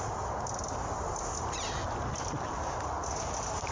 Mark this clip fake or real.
real